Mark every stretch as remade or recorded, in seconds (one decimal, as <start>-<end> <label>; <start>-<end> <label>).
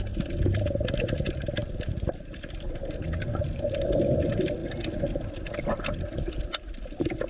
0.0-1.6 recorded; 1.6-3.8 remade; 3.8-7.3 recorded